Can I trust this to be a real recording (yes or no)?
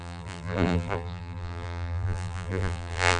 no